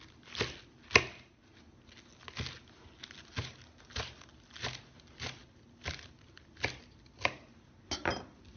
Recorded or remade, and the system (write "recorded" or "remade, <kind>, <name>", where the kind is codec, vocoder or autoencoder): recorded